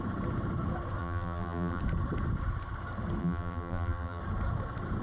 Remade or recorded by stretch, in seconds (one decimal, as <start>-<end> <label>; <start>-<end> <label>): 0.0-1.0 recorded; 1.0-1.8 remade; 1.8-3.2 recorded; 3.2-4.2 remade; 4.2-5.0 recorded